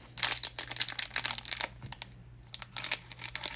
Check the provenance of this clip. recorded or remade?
recorded